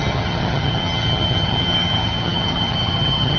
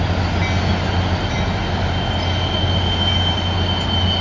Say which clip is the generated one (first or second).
first